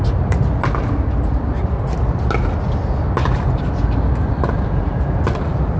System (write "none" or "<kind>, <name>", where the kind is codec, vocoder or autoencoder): none